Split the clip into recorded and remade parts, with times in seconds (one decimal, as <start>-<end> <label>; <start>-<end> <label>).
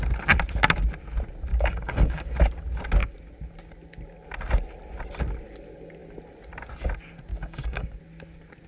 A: 0.0-1.5 recorded; 1.5-2.4 remade; 2.4-7.3 recorded; 7.3-8.0 remade; 8.0-8.7 recorded